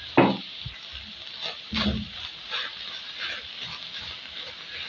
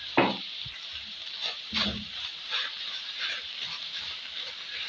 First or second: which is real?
first